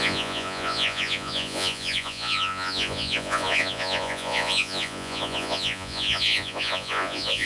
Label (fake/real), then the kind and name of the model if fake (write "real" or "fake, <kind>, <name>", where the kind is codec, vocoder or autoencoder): fake, vocoder, Vocos